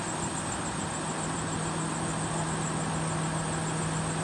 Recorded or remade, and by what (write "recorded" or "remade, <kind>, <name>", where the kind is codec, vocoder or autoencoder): recorded